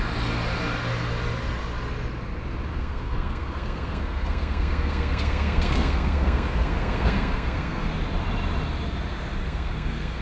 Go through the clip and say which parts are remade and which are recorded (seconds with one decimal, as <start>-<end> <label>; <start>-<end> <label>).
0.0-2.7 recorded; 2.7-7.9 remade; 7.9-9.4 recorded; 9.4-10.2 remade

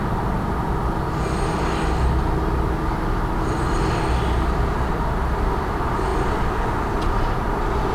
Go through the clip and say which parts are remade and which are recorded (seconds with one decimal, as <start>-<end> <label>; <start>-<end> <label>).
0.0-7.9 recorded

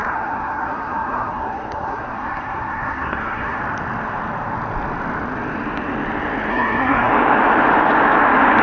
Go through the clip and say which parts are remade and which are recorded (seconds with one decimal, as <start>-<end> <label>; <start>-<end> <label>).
0.0-3.6 remade; 3.6-6.5 recorded; 6.5-7.1 remade; 7.1-8.6 recorded

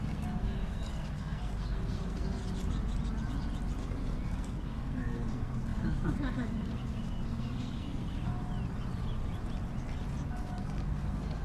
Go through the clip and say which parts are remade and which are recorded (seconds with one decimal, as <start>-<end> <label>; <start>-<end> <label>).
0.0-2.4 remade; 2.4-3.8 recorded; 3.8-8.3 remade; 8.3-10.4 recorded; 10.4-11.4 remade

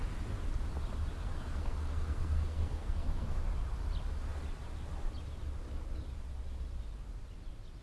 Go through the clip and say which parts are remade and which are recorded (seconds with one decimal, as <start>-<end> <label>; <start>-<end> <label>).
0.0-1.2 recorded; 1.2-3.5 remade; 3.5-7.8 recorded

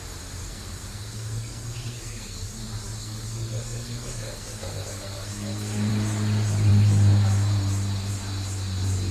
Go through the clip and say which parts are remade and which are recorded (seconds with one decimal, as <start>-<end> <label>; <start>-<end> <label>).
0.0-0.4 recorded; 0.4-2.6 remade; 2.6-3.0 recorded; 3.0-5.9 remade; 5.9-9.1 recorded